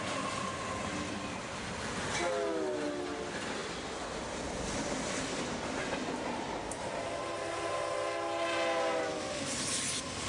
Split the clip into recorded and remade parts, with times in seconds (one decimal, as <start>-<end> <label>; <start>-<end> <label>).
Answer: 0.0-10.3 recorded